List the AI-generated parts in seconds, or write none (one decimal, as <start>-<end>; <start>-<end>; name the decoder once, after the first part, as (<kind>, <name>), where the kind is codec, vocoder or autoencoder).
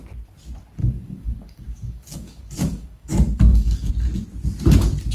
0.8-3.9 (codec, DAC)